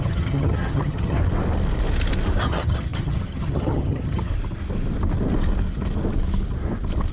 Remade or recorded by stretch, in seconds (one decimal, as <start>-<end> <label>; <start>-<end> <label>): 0.0-1.2 remade; 1.2-2.4 recorded; 2.4-4.3 remade; 4.3-7.1 recorded